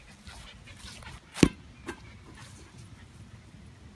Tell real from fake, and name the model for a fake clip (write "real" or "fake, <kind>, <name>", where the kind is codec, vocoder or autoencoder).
real